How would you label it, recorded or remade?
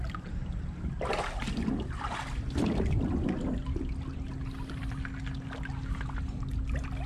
recorded